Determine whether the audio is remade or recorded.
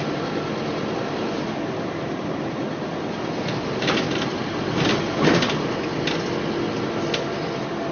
recorded